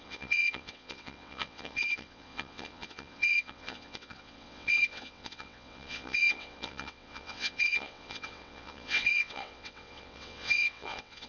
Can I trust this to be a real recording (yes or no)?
no